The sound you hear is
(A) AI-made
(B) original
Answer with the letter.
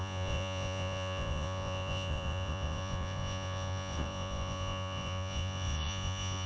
A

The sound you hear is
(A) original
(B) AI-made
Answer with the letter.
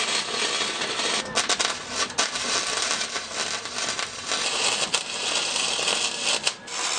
A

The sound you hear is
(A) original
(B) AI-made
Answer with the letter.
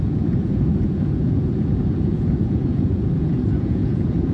B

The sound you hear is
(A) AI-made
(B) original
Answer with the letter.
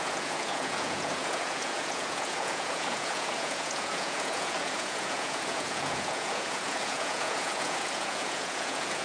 A